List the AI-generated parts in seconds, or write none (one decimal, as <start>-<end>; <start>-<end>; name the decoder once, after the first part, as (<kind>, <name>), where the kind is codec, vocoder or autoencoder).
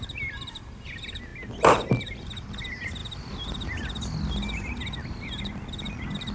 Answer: none